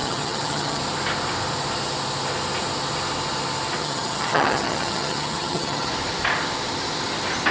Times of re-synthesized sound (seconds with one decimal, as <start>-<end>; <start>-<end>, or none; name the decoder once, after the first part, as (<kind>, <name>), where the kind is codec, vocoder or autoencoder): 0.0-0.8 (vocoder, HiFi-GAN); 3.8-5.9